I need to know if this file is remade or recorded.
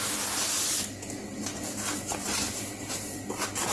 recorded